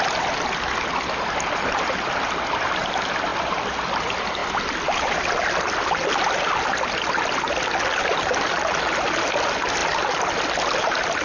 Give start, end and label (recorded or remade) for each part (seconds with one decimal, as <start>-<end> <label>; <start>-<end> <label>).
0.0-11.2 recorded